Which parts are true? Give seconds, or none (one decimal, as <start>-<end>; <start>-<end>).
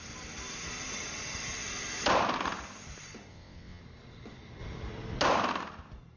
0.0-3.3; 3.8-6.2